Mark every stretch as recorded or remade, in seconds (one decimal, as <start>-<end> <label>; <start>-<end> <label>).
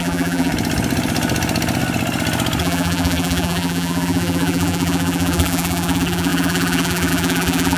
0.0-0.5 remade; 0.5-2.6 recorded; 2.6-7.8 remade